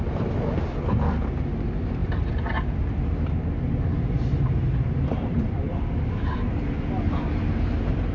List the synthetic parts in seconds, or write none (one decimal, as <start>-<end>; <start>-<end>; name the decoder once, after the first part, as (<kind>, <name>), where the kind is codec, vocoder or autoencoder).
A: 4.6-5.9 (vocoder, BigVGAN v2)